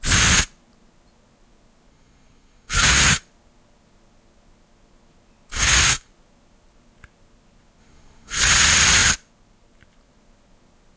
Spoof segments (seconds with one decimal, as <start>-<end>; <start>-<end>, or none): 1.9-3.2; 5.5-6.1; 7.8-8.4